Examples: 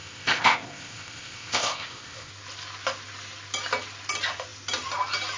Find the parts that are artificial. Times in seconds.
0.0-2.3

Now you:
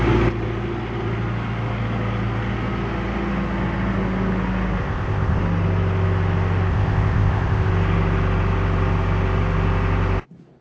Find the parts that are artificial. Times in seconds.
4.8-5.4; 6.7-7.7

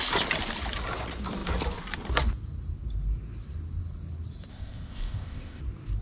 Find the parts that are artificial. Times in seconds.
4.5-5.6